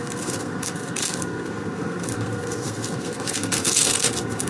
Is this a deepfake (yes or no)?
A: yes